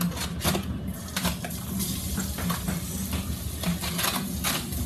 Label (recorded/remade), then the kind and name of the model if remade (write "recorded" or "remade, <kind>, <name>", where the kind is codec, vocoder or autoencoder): recorded